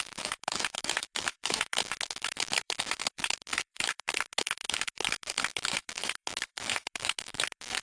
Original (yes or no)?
no